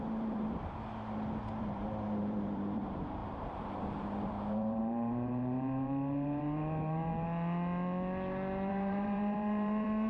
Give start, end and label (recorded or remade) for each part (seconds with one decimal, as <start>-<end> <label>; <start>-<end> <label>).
0.0-0.6 remade; 0.6-1.4 recorded; 1.4-7.1 remade; 7.1-8.7 recorded; 8.7-10.1 remade